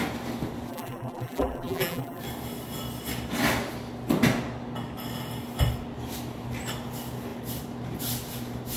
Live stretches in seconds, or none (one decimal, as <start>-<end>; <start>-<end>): 0.0-0.7; 2.2-8.8